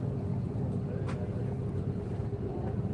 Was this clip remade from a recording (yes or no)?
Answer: no